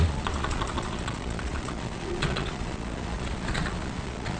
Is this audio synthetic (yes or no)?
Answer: yes